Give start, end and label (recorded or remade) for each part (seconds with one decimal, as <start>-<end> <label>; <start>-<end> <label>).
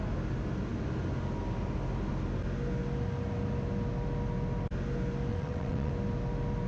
0.0-5.3 recorded; 5.3-5.9 remade; 5.9-6.7 recorded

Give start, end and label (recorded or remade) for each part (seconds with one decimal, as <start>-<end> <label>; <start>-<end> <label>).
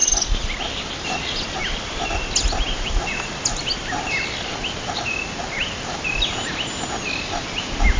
0.0-8.0 recorded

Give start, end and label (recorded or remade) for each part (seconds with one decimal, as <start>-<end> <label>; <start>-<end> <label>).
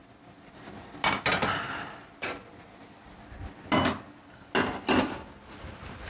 0.0-6.1 recorded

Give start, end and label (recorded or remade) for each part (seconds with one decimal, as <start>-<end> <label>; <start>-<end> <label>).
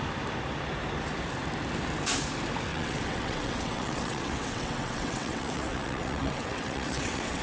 0.0-2.7 recorded; 2.7-7.4 remade